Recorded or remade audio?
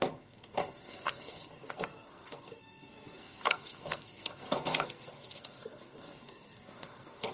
remade